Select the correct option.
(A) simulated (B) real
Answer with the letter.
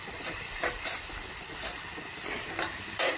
B